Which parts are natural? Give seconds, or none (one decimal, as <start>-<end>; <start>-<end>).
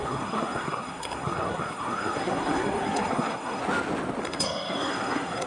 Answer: 3.6-4.2